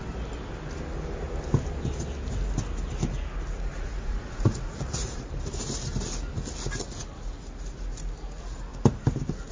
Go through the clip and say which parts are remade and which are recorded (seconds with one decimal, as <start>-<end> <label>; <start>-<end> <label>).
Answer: 0.0-3.7 recorded; 3.7-5.3 remade; 5.3-9.5 recorded